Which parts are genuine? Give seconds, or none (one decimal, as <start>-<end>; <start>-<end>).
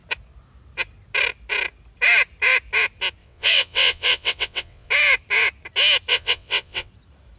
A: 0.0-3.2; 4.9-6.1; 6.9-7.4